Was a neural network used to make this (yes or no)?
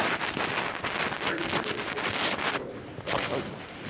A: no